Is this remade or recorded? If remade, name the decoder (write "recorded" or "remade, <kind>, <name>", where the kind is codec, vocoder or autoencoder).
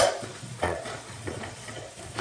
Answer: remade, vocoder, Vocos